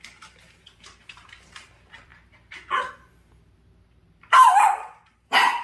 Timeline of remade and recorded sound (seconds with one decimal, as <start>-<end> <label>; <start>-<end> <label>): 0.0-2.1 remade; 2.1-4.1 recorded; 4.1-5.6 remade